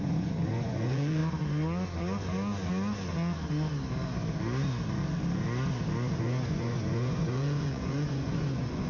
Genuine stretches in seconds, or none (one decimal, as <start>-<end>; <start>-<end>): 1.2-6.1